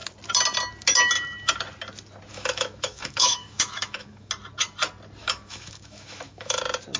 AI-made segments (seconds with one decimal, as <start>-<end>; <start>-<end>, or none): 2.3-4.3; 5.2-6.6